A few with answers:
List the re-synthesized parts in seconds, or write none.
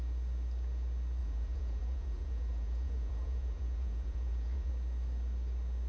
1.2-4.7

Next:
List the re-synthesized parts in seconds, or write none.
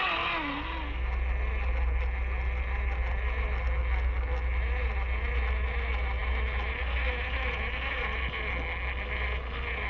none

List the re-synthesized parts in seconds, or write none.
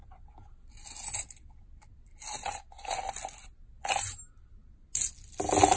none